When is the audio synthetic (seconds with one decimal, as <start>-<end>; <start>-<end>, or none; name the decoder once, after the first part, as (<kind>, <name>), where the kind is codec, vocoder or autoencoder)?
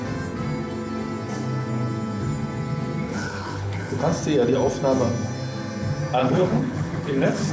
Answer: 3.1-4.0 (codec, HILCodec); 6.2-7.5